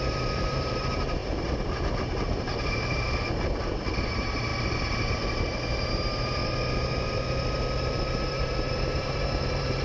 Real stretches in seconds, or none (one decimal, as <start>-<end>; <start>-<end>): 4.5-5.1; 6.4-8.1